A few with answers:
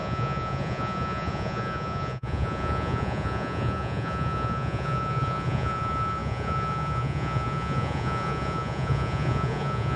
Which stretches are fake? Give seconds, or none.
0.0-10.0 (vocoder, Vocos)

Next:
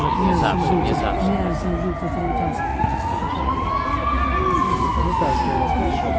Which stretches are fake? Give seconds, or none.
2.7-3.5 (vocoder, Vocos)

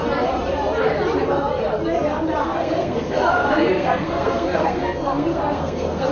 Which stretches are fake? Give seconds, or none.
2.4-6.1 (codec, SNAC)

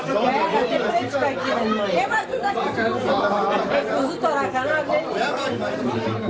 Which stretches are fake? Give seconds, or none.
none

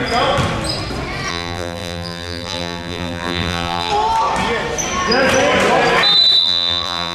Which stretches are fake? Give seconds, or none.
1.3-3.9 (vocoder, BigVGAN v2); 6.4-7.1

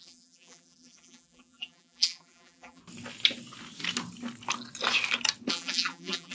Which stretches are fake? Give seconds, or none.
0.0-2.8 (vocoder, BigVGAN v2); 5.5-6.3

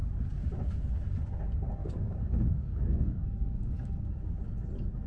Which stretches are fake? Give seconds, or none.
1.8-4.1 (codec, DAC)

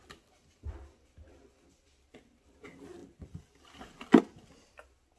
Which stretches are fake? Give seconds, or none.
0.0-5.2 (vocoder, BigVGAN v2)